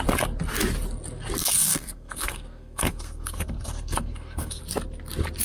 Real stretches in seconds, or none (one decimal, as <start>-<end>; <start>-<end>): 0.0-1.4; 4.6-5.4